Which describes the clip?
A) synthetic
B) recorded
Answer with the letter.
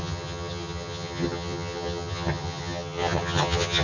A